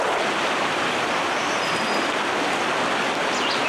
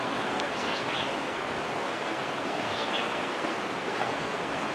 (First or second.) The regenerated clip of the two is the second